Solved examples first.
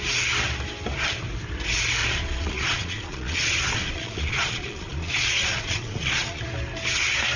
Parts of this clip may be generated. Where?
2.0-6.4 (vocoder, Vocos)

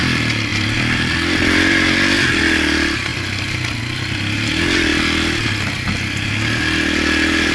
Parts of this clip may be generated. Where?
0.5-2.4 (vocoder, BigVGAN v2); 3.1-3.8